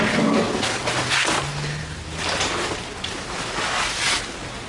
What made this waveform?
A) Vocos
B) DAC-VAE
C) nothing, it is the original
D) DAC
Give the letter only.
C